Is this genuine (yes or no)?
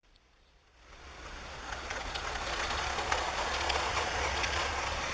no